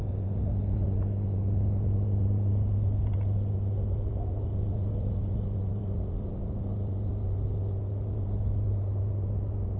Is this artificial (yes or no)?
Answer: no